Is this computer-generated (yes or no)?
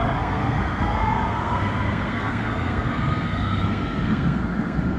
yes